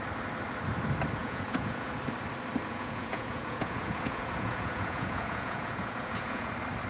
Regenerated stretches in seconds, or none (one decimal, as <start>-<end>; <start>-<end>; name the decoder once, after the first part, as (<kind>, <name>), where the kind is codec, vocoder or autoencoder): 1.2-1.9 (vocoder, Vocos); 2.7-6.5